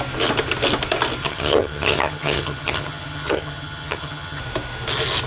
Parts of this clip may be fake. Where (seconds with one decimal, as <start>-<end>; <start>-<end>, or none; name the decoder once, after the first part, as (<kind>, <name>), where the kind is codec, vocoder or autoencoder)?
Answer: 1.2-4.4 (vocoder, HiFi-GAN)